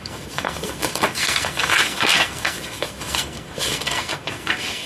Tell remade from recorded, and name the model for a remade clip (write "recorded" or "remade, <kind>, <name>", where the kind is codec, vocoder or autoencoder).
remade, codec, SNAC